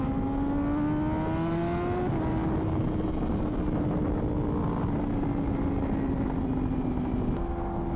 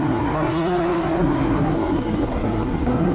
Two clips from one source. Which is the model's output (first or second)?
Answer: second